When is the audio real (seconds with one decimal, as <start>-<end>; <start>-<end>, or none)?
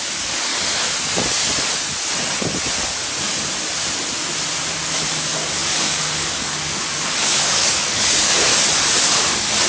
0.5-4.7; 8.5-9.0